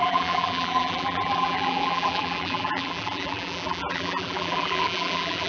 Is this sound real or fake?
fake